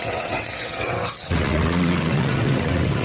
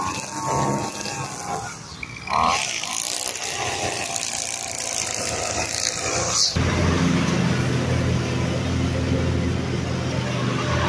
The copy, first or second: first